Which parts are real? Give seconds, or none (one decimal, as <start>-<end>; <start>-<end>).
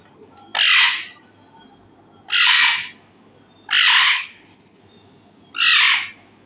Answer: 0.0-4.0; 4.8-6.5